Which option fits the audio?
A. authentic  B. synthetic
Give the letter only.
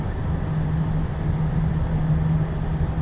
A